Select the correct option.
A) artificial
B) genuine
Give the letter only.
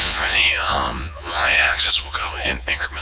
A